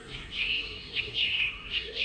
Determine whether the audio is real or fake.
fake